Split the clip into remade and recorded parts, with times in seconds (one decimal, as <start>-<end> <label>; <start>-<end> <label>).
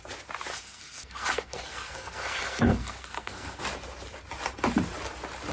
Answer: 0.0-0.5 recorded; 0.5-3.6 remade; 3.6-5.5 recorded